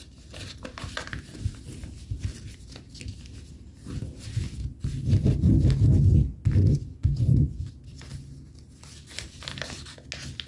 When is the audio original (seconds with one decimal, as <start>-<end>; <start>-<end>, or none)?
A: 0.0-6.6; 7.7-10.5

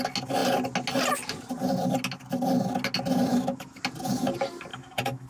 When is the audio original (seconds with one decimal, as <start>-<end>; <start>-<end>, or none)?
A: 0.0-3.3; 3.8-4.7

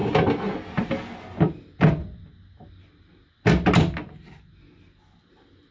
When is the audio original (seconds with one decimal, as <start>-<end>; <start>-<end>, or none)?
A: 0.0-5.7

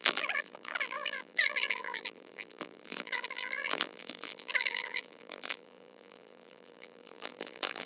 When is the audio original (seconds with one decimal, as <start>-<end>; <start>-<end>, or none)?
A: none

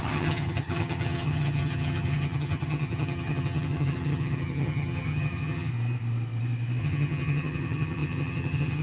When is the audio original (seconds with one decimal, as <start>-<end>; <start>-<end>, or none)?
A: 5.7-6.8